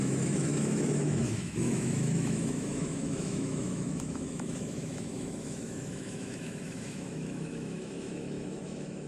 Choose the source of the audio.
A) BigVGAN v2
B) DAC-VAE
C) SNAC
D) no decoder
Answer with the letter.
B